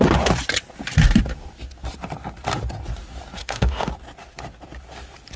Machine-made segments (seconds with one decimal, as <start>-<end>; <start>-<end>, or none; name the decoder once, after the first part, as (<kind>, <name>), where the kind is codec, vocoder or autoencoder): 3.4-3.9 (autoencoder, DAC-VAE)